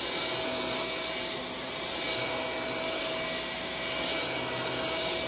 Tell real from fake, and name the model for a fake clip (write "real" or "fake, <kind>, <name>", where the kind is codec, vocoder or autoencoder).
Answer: real